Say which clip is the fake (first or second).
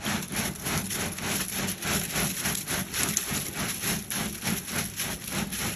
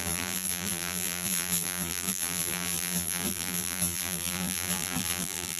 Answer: second